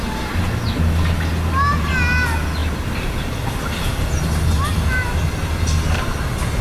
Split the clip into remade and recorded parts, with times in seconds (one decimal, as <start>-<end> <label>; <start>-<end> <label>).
0.0-2.6 recorded; 2.6-3.6 remade; 3.6-6.6 recorded